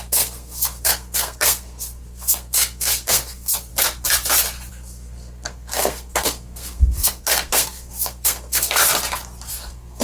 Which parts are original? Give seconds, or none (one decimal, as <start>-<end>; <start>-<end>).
3.7-4.7; 8.8-9.5